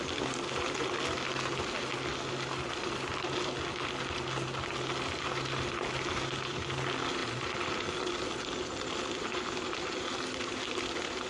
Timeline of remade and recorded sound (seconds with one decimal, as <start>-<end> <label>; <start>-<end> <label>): 0.0-11.3 recorded